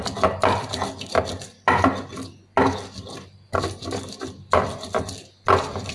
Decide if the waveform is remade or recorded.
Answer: recorded